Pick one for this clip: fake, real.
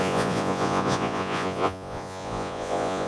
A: fake